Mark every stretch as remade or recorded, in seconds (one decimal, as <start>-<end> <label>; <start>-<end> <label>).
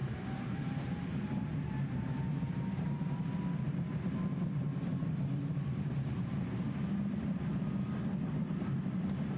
0.0-3.2 remade; 3.2-4.9 recorded; 4.9-6.8 remade; 6.8-9.4 recorded